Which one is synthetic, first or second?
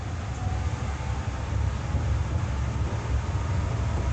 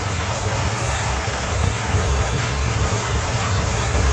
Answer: second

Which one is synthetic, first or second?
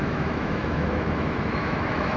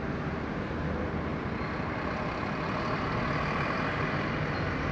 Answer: first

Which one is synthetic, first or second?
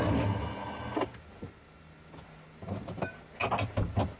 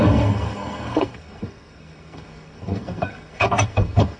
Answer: second